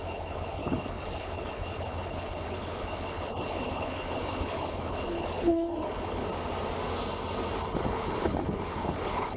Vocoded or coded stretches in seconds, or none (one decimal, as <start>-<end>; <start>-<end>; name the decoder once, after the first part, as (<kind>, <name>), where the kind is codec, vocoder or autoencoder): 0.0-6.2 (codec, HILCodec); 7.8-9.4